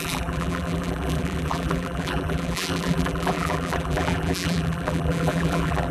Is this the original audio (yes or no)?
no